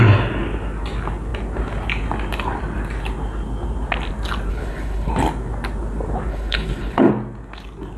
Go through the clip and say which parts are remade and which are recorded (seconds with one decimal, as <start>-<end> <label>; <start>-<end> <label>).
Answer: 0.0-4.5 recorded; 4.5-5.1 remade; 5.1-6.3 recorded; 6.3-7.1 remade; 7.1-8.0 recorded